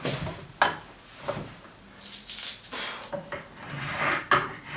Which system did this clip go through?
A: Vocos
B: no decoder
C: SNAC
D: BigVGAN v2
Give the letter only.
B